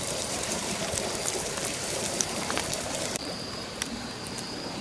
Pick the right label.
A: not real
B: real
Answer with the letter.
A